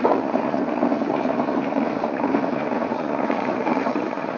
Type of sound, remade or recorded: remade